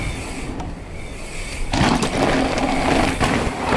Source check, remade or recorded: recorded